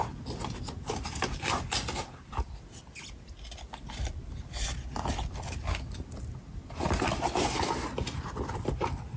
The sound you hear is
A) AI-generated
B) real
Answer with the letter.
B